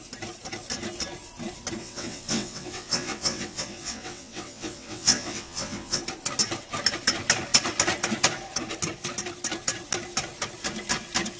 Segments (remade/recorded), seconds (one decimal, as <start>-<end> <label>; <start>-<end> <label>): 0.0-1.8 recorded; 1.8-6.0 remade; 6.0-11.4 recorded